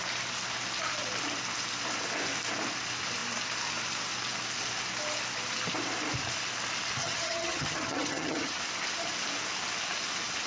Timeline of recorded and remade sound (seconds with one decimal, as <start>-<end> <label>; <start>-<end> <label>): 0.0-7.0 recorded; 7.0-8.6 remade; 8.6-10.5 recorded